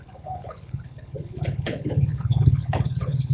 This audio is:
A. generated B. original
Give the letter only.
A